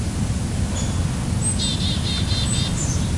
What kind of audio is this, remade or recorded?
recorded